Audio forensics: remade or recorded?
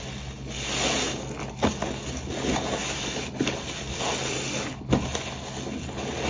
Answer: recorded